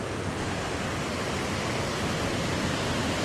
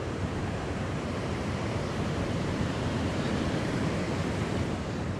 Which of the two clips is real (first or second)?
first